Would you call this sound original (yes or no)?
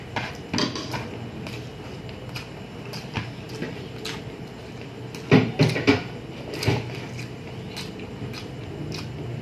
yes